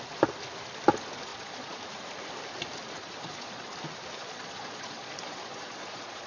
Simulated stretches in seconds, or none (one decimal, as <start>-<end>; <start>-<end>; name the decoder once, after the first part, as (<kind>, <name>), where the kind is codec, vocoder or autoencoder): 1.3-1.8 (vocoder, Vocos); 3.0-3.7; 4.2-6.3